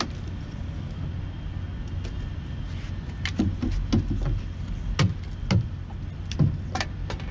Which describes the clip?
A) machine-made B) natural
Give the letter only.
B